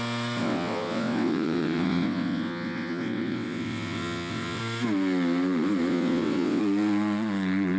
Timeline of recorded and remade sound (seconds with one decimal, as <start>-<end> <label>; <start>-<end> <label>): 0.0-0.4 recorded; 0.4-4.6 remade; 4.6-5.9 recorded; 5.9-6.6 remade; 6.6-7.8 recorded